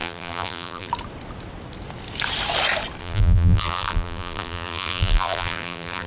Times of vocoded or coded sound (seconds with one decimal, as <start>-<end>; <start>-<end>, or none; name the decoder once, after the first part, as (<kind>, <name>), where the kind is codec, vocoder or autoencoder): 0.0-0.9 (vocoder, BigVGAN v2); 3.0-6.1